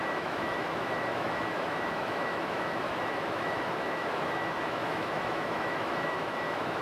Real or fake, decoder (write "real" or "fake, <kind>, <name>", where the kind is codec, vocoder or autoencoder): fake, autoencoder, DAC-VAE